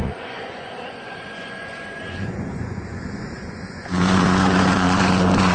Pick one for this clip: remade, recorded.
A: remade